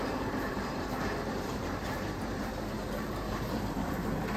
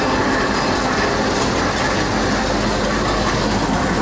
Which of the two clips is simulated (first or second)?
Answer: first